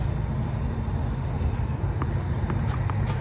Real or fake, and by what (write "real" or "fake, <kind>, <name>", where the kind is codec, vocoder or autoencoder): real